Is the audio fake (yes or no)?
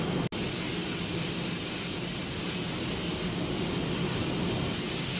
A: no